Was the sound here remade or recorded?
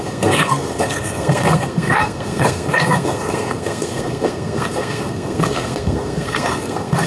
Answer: remade